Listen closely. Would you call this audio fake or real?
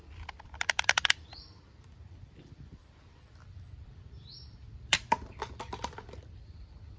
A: fake